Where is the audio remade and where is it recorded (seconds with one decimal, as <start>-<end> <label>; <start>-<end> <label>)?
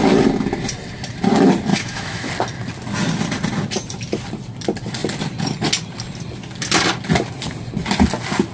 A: 0.0-1.7 recorded; 1.7-2.3 remade; 2.3-8.5 recorded